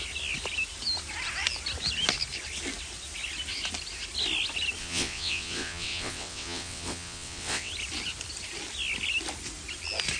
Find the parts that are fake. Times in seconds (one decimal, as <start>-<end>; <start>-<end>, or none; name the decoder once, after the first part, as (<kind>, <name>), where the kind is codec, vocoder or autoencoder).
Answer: 4.8-7.7 (vocoder, WaveNeXt)